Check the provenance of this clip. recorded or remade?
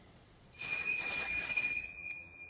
remade